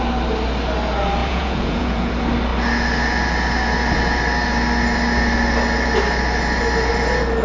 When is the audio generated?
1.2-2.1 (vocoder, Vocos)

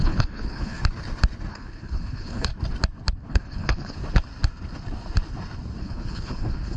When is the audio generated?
0.0-0.8 (codec, HILCodec); 1.5-2.5; 3.3-4.0; 5.8-6.8

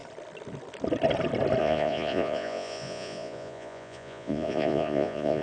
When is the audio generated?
1.6-5.4 (vocoder, Vocos)

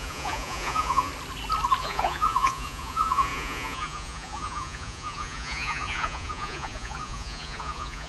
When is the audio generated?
0.0-1.1 (vocoder, Vocos); 1.8-8.1